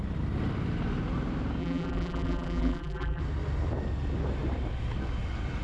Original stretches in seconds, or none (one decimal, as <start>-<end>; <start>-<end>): 0.0-1.6; 3.2-5.6